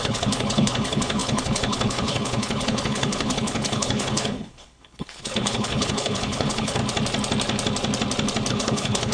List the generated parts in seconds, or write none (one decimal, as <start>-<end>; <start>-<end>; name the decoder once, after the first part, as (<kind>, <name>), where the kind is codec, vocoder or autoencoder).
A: 0.0-6.8 (codec, HILCodec); 8.5-9.1